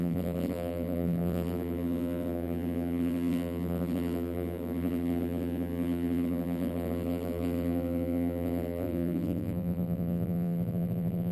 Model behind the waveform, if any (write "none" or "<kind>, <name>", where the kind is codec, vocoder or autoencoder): vocoder, BigVGAN v2